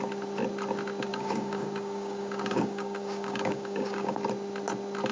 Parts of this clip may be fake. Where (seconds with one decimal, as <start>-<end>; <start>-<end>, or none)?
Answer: 1.1-4.2